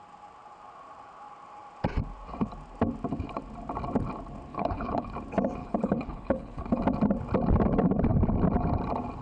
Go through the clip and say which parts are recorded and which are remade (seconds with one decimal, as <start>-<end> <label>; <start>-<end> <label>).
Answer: 0.0-4.5 recorded; 4.5-5.1 remade; 5.1-5.6 recorded; 5.6-6.8 remade; 6.8-9.2 recorded

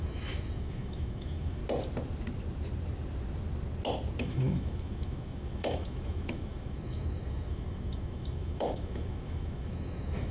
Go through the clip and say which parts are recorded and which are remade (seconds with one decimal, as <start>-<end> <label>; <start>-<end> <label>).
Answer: 0.0-1.6 remade; 1.6-4.2 recorded; 4.2-10.3 remade

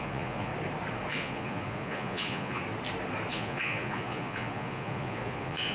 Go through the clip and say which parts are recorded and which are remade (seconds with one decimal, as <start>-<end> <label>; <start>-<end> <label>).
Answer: 0.0-0.5 remade; 0.5-1.1 recorded; 1.1-2.6 remade; 2.6-3.3 recorded; 3.3-5.7 remade

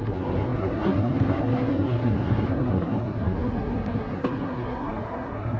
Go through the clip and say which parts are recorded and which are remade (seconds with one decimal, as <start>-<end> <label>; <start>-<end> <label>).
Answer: 0.0-5.6 remade

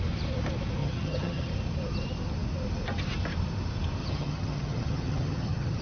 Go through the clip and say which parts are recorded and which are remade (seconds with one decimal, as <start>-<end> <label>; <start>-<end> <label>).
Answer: 0.0-0.8 recorded; 0.8-1.5 remade; 1.5-4.0 recorded; 4.0-5.8 remade

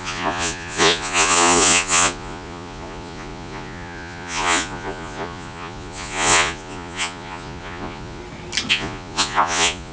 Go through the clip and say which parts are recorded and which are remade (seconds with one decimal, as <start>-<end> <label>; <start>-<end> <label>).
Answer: 0.0-8.2 remade; 8.2-8.7 recorded; 8.7-9.9 remade

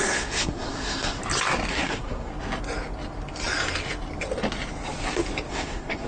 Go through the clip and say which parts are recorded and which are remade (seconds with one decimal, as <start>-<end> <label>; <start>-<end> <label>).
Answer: 0.0-1.2 remade; 1.2-1.7 recorded; 1.7-2.3 remade; 2.3-5.5 recorded; 5.5-6.1 remade